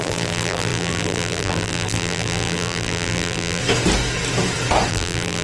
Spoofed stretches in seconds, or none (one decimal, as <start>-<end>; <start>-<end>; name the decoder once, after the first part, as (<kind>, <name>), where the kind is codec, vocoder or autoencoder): 0.0-3.6 (vocoder, BigVGAN v2); 4.9-5.4